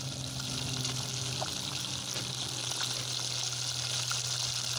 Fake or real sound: real